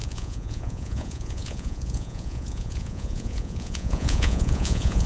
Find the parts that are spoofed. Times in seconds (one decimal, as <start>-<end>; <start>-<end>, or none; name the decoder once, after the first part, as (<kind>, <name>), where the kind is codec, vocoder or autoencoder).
0.0-5.1 (vocoder, Vocos)